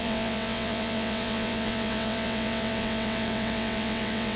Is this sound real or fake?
fake